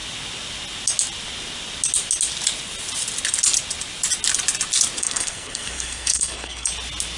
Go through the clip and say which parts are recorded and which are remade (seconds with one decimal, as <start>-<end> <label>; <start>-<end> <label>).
0.0-5.0 recorded; 5.0-6.7 remade; 6.7-7.2 recorded